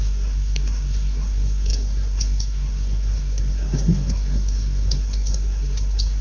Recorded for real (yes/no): no